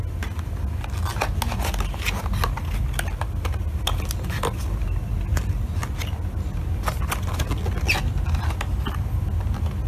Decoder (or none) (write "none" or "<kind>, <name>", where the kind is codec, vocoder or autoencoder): none